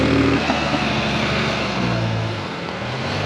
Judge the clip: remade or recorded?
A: remade